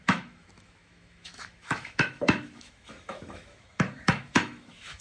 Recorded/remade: remade